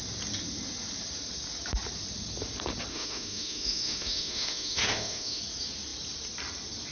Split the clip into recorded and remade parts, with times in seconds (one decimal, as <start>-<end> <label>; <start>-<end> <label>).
0.0-2.9 recorded; 2.9-5.4 remade; 5.4-6.9 recorded